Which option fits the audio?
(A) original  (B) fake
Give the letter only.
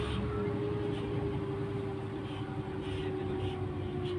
A